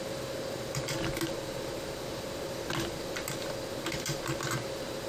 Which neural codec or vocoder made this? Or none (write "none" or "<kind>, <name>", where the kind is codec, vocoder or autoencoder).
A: none